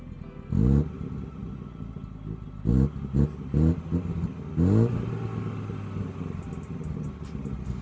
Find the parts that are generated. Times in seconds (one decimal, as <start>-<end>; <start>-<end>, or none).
none